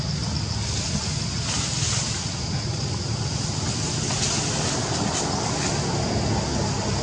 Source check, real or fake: real